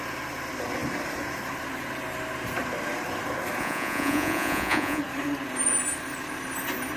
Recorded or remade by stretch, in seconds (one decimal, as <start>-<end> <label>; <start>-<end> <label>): 0.0-3.6 recorded; 3.6-5.0 remade; 5.0-7.0 recorded